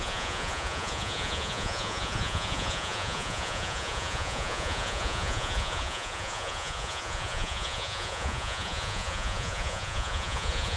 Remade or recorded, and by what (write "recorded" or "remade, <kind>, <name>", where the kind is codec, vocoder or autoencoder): remade, vocoder, Vocos